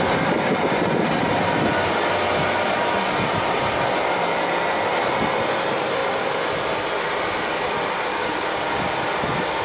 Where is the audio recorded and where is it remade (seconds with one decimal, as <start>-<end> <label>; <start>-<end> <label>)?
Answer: 0.0-8.1 recorded; 8.1-8.9 remade; 8.9-9.6 recorded